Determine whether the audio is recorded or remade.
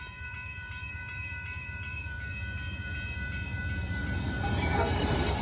remade